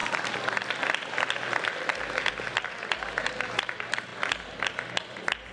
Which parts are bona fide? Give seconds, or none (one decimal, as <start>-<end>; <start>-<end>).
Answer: 0.0-5.5